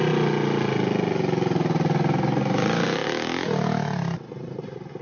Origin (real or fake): real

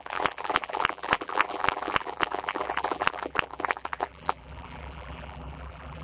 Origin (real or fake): fake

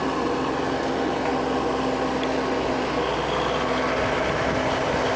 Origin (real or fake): real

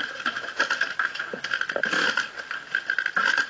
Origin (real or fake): real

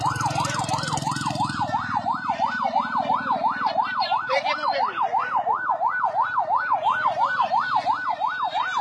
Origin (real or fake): fake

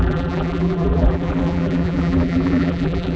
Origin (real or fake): fake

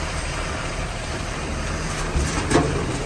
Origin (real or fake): fake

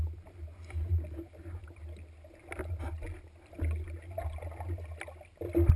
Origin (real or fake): real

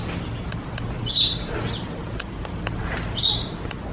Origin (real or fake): real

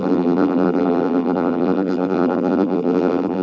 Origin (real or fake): fake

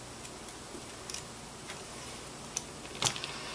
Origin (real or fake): real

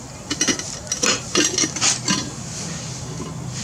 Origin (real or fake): real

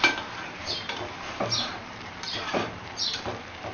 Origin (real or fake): fake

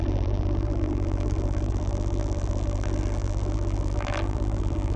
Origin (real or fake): fake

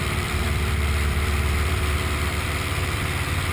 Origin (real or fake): fake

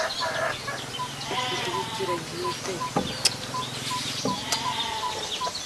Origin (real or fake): real